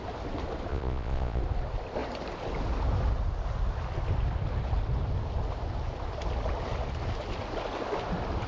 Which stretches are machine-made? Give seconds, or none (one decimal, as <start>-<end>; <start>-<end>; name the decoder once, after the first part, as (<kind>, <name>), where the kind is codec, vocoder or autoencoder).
0.7-1.4 (vocoder, Vocos)